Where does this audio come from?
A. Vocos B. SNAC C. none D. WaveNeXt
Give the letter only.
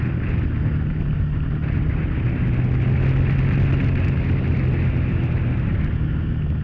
C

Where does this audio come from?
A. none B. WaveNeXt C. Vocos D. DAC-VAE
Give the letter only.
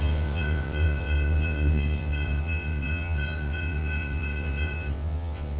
B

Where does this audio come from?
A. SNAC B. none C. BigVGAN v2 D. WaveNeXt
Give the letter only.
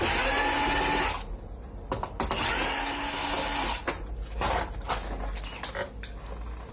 B